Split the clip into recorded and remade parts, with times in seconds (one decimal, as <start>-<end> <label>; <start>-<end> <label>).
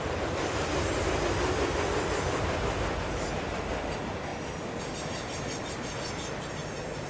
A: 0.0-7.1 recorded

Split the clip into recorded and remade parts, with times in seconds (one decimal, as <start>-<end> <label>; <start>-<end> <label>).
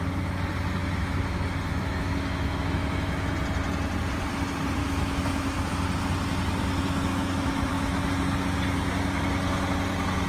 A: 0.0-0.8 recorded; 0.8-3.3 remade; 3.3-4.8 recorded; 4.8-5.7 remade; 5.7-7.1 recorded; 7.1-8.1 remade; 8.1-10.3 recorded